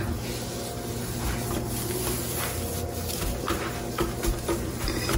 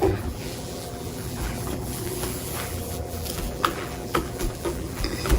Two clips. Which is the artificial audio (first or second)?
second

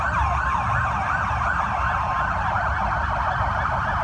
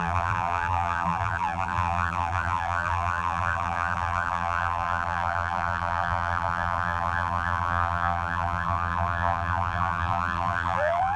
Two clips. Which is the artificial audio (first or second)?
second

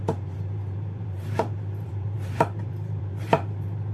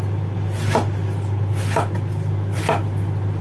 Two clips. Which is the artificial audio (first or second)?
first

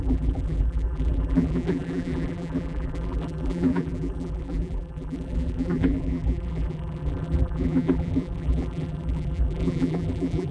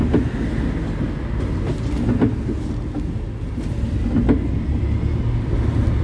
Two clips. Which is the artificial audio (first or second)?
first